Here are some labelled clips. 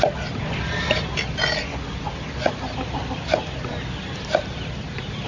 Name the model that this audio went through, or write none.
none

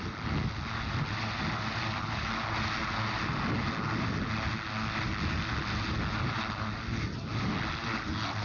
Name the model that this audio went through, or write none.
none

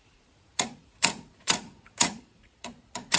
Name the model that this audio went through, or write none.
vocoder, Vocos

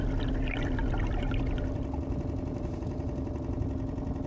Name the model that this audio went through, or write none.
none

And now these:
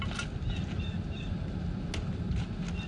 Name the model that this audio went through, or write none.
none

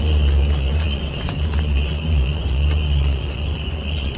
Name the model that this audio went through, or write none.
vocoder, Vocos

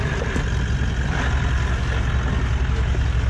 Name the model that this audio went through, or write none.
none